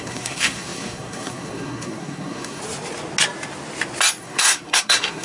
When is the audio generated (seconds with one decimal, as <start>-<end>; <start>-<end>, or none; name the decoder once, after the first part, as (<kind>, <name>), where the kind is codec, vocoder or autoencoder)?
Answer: 0.0-2.6 (codec, SNAC); 4.2-5.2